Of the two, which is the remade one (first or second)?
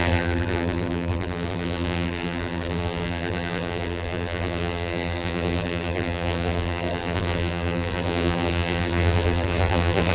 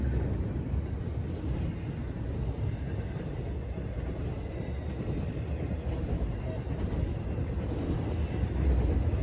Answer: first